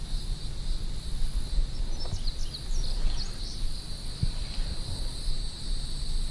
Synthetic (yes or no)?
no